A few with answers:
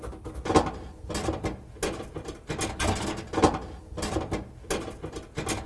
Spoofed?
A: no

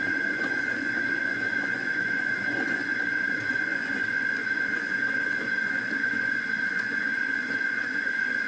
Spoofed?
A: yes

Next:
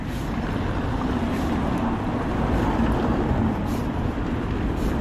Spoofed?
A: no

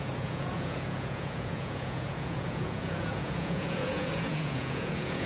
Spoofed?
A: yes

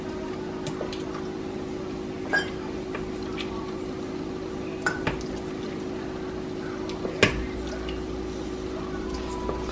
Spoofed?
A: no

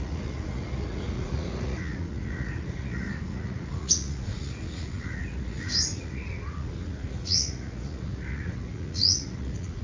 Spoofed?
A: yes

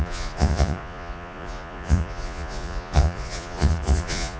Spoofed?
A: yes